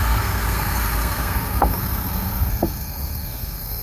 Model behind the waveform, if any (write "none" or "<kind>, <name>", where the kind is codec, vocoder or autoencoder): codec, SNAC